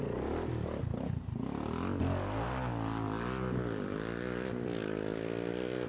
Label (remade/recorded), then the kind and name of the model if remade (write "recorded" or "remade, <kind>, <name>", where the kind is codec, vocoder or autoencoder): recorded